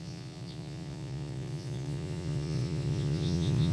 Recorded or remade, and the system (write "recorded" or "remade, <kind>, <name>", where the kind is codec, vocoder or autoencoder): remade, vocoder, Vocos